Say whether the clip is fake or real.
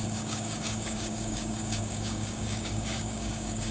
fake